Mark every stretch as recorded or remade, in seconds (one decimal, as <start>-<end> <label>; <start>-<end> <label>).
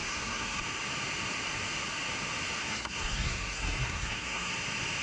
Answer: 0.0-0.6 remade; 0.6-2.6 recorded; 2.6-4.5 remade; 4.5-5.0 recorded